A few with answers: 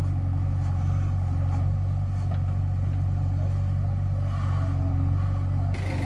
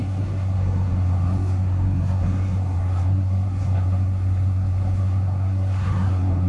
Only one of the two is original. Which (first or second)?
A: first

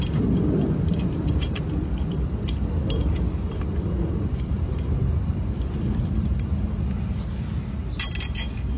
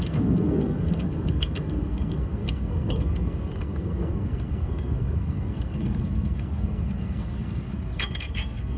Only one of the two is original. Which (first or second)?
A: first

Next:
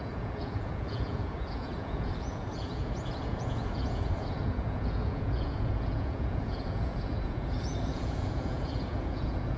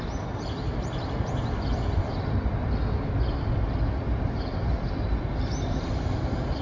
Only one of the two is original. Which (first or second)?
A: second